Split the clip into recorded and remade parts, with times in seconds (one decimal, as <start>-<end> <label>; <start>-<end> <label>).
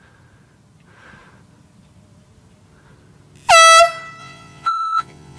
0.0-4.2 recorded; 4.2-5.4 remade